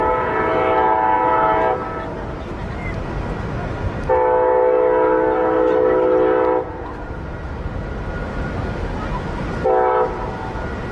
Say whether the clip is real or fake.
real